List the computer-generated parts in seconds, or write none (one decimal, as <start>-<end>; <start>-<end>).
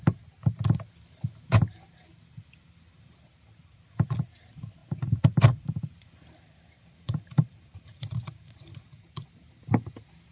4.8-8.8